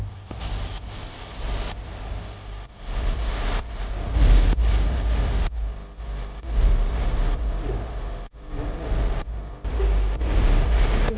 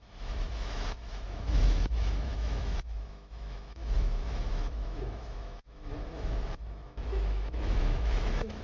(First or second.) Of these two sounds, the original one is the first